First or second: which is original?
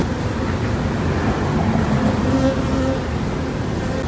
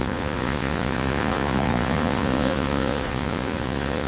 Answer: first